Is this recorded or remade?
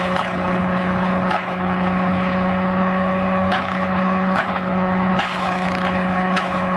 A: remade